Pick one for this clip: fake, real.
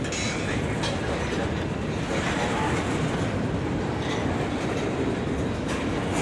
real